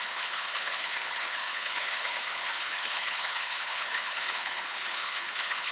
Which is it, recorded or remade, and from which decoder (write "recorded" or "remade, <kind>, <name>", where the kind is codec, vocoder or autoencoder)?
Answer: remade, codec, HILCodec